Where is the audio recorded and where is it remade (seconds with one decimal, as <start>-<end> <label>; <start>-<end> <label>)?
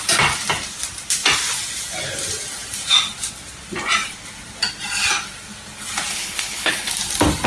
0.0-6.1 recorded; 6.1-6.9 remade; 6.9-7.5 recorded